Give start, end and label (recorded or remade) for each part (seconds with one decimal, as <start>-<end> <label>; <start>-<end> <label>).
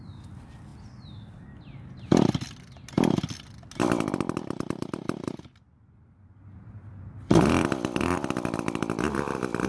0.0-9.7 recorded